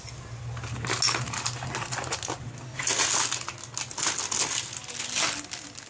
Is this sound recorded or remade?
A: recorded